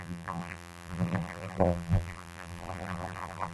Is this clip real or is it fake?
fake